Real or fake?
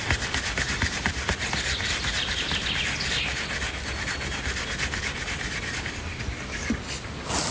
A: real